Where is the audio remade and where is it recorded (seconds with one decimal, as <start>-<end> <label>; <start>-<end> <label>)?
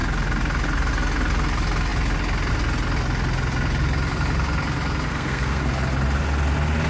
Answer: 0.0-5.1 recorded; 5.1-5.6 remade; 5.6-6.9 recorded